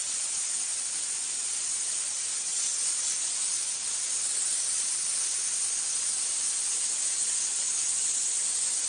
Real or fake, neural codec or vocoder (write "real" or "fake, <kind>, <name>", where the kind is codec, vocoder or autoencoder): real